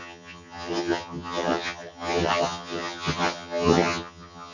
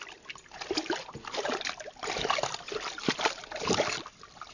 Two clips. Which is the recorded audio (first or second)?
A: second